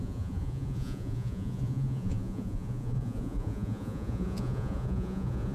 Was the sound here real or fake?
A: fake